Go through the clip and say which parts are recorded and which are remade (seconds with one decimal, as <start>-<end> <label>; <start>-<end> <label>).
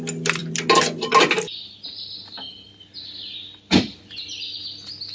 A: 0.0-5.1 recorded